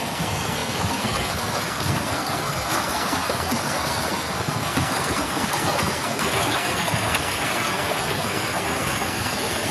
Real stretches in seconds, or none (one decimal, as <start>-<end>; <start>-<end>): none